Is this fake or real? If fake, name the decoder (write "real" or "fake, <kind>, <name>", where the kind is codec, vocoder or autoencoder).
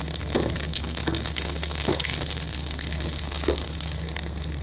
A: fake, codec, SNAC